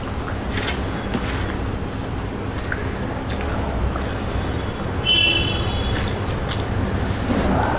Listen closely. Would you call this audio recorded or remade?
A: recorded